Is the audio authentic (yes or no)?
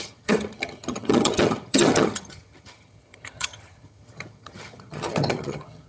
no